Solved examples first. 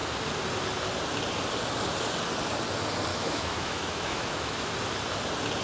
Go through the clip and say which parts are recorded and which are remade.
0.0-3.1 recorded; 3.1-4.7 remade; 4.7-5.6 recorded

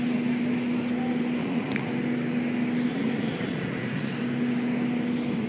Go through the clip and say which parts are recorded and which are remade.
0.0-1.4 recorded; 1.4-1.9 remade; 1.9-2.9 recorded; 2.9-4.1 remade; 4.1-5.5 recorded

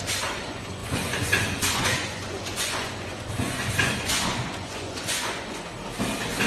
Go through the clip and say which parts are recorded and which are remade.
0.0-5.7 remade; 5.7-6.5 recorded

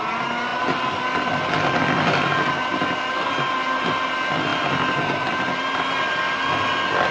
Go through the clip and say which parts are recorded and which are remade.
0.0-7.1 recorded